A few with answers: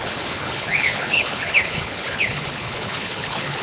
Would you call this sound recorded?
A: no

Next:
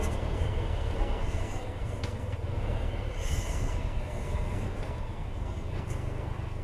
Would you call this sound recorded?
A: no